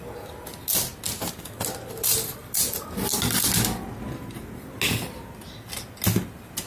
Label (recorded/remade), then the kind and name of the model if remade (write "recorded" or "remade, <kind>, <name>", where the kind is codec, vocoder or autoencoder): recorded